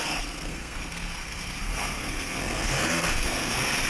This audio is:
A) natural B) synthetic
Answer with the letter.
B